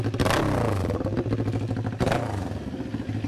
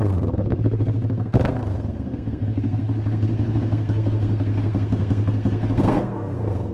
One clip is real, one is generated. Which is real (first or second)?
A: first